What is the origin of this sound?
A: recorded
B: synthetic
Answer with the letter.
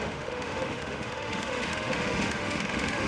B